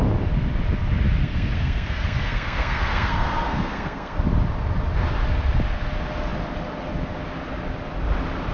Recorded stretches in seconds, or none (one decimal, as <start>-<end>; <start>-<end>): 0.0-1.2; 4.2-8.5